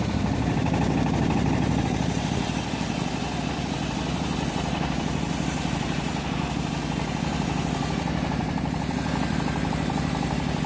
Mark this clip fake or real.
fake